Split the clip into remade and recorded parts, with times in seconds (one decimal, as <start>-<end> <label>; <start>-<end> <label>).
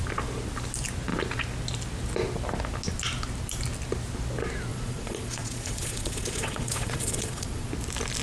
0.0-4.7 recorded; 4.7-7.7 remade; 7.7-8.2 recorded